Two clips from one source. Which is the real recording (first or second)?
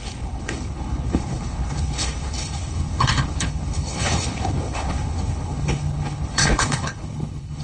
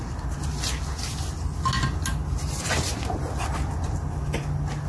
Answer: second